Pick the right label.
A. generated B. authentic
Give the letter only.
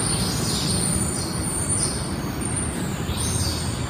B